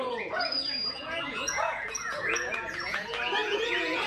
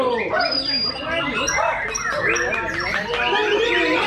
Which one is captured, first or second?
second